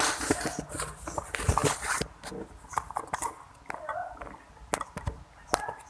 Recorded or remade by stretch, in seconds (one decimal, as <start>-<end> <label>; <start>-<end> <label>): 0.0-5.9 recorded